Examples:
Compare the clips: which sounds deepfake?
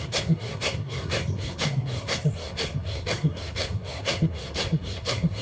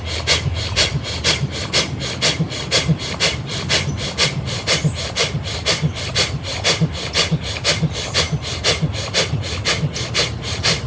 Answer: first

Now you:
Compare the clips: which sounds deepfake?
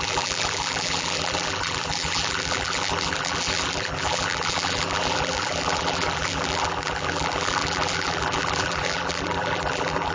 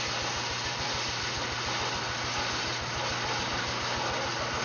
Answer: first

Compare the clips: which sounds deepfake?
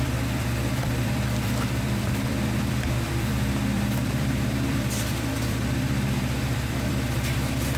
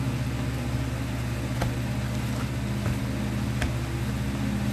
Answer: first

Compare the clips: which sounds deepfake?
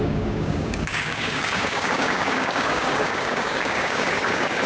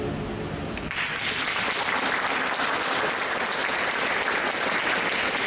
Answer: first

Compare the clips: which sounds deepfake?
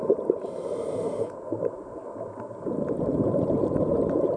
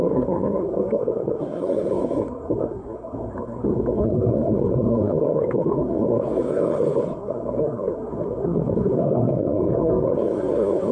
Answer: second